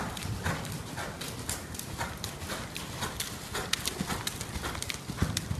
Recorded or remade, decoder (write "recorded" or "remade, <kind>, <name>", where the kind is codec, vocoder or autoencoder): recorded